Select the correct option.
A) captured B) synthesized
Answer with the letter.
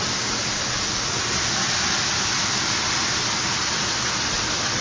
A